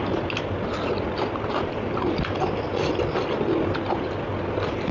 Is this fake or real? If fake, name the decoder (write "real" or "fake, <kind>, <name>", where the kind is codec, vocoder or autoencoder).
real